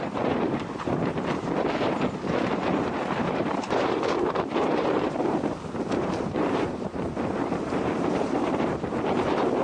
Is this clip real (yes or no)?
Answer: no